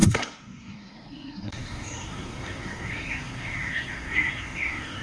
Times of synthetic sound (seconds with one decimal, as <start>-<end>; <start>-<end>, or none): 0.0-5.0